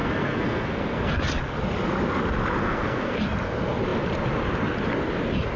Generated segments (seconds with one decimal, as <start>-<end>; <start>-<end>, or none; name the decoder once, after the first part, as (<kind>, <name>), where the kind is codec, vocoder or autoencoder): 0.0-1.1 (codec, SNAC); 2.6-3.2